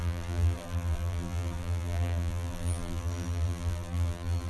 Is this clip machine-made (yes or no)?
yes